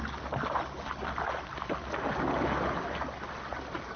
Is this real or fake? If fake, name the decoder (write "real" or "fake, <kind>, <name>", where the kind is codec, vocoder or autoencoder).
real